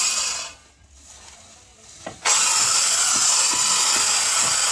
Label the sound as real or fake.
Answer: real